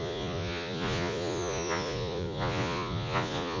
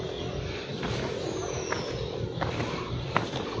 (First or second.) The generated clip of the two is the first